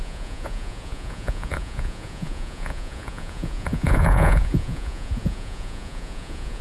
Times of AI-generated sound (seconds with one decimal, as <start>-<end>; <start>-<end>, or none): 0.0-6.6